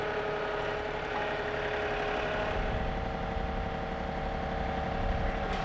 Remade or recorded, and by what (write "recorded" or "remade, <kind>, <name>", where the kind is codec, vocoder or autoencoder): recorded